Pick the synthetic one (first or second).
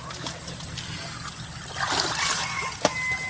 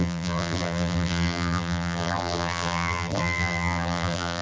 second